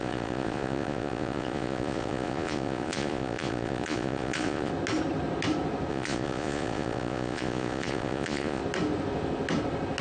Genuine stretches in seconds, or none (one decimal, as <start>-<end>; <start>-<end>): 4.7-5.9; 8.6-10.0